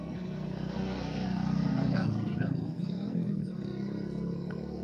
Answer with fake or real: fake